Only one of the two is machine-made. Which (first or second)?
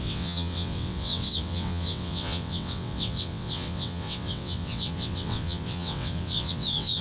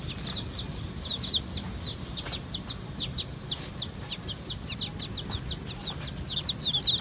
first